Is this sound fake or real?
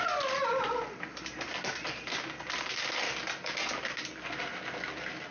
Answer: real